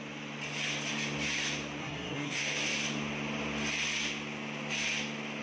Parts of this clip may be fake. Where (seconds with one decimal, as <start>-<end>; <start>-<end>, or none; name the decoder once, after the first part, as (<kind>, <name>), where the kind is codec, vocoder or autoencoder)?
1.8-2.4 (codec, SNAC)